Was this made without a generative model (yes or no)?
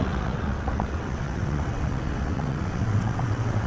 no